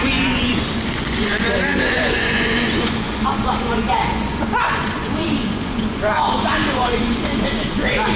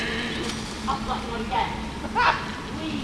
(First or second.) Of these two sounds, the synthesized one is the first